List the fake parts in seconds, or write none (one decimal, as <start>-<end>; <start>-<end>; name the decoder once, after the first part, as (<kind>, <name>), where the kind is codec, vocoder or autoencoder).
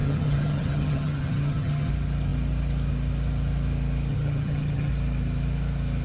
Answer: 0.0-1.9 (vocoder, HiFi-GAN); 4.1-4.9